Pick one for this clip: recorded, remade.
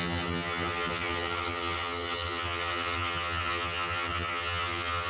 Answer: remade